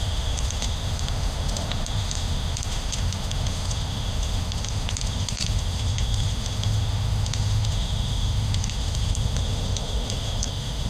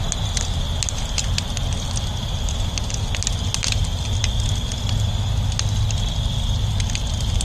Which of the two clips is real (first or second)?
second